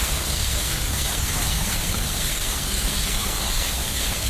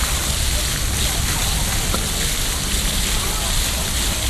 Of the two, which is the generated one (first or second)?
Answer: first